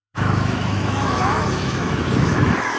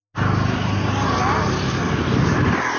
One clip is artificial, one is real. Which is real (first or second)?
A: second